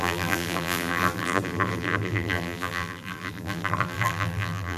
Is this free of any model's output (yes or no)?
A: no